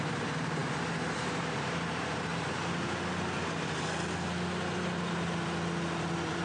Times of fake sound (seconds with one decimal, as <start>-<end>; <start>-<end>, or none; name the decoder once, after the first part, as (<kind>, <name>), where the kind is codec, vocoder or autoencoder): 0.0-2.3 (vocoder, BigVGAN v2); 6.0-6.4